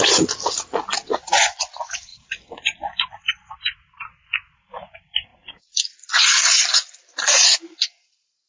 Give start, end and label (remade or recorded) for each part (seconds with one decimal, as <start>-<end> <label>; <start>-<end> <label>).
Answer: 0.0-8.5 recorded